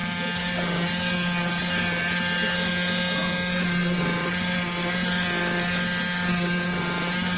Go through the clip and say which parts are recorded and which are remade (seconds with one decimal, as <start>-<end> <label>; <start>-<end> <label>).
0.0-7.4 recorded